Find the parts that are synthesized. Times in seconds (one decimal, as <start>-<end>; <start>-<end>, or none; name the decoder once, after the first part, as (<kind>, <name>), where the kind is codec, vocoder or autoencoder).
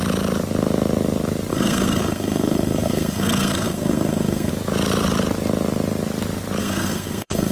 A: 1.5-4.5 (codec, SNAC); 6.6-7.5